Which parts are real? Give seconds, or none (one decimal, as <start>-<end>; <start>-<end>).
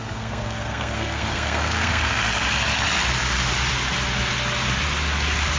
2.2-5.6